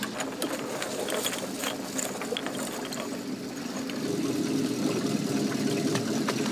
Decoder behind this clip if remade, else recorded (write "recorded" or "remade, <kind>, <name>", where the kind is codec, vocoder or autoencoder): recorded